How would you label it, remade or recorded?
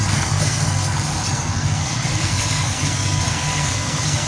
remade